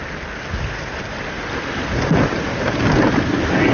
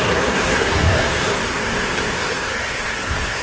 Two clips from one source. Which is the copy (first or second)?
second